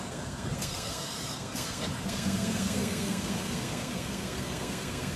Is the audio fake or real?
fake